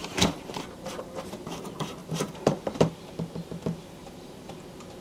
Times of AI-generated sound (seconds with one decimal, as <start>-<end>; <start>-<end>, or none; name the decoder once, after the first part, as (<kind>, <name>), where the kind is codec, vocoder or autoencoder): 0.0-1.6 (vocoder, BigVGAN v2); 2.0-2.9; 4.0-4.5